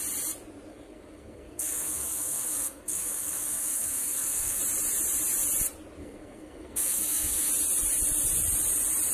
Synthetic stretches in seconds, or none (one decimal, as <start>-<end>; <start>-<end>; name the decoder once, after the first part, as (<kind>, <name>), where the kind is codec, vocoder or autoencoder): 0.7-4.6 (codec, SNAC); 6.0-7.5